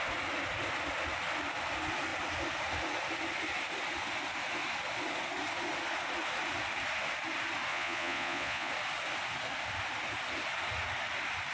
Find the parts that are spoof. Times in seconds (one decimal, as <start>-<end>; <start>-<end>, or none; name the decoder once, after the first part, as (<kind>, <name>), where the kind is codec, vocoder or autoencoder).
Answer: 7.7-8.7 (vocoder, Vocos)